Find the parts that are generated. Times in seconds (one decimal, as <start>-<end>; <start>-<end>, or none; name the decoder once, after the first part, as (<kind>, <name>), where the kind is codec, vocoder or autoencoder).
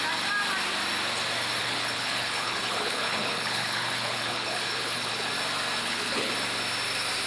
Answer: 1.6-5.3 (codec, HILCodec); 5.8-6.3